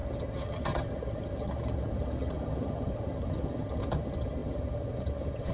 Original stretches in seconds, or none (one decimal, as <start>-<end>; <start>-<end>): none